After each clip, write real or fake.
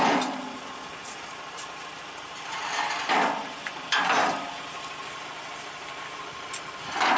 real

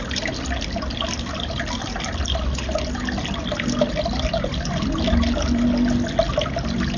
real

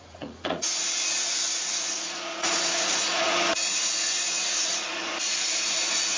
fake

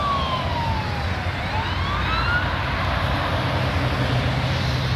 real